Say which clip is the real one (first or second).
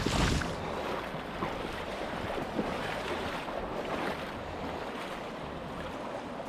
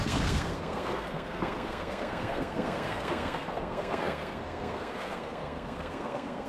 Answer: first